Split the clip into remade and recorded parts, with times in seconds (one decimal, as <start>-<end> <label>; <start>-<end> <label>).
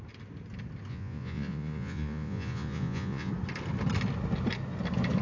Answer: 0.0-0.9 recorded; 0.9-3.3 remade; 3.3-5.2 recorded